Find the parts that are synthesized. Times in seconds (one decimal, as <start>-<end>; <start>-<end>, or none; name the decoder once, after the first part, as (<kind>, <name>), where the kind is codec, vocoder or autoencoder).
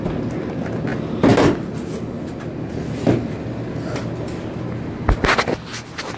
none